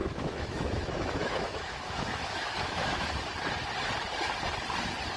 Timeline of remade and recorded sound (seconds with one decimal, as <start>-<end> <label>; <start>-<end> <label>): 0.0-3.1 remade; 3.1-5.2 recorded

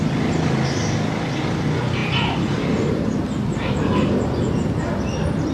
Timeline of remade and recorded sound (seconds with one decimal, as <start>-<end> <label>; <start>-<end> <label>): 0.0-5.5 recorded